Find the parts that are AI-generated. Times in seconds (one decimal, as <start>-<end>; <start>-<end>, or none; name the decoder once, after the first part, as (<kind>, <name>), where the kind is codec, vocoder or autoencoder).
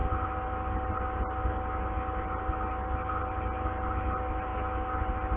4.5-5.0 (autoencoder, DAC-VAE)